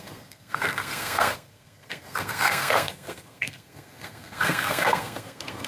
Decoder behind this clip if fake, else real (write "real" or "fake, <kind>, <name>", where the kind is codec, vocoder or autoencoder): fake, codec, SNAC